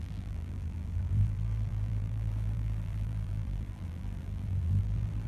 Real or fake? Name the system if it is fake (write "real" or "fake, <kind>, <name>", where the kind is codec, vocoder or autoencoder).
fake, vocoder, BigVGAN v2